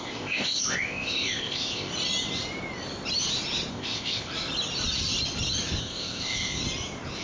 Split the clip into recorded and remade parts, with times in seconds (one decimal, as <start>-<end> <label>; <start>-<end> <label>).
0.0-1.9 remade; 1.9-3.7 recorded; 3.7-4.3 remade; 4.3-5.8 recorded; 5.8-6.6 remade; 6.6-7.2 recorded